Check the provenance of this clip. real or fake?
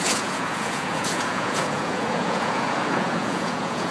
fake